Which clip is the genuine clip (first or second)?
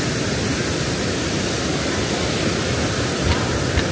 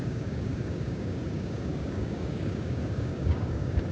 first